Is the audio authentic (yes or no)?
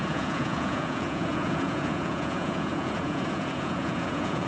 no